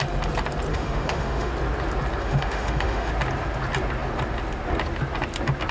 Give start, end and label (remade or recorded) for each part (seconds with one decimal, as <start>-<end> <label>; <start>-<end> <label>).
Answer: 0.0-0.7 recorded; 0.7-1.5 remade; 1.5-2.2 recorded; 2.2-3.1 remade; 3.1-5.7 recorded